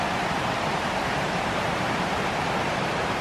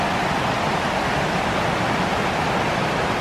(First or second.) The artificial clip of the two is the first